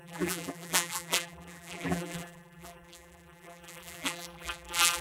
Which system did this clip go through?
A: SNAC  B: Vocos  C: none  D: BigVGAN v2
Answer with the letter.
D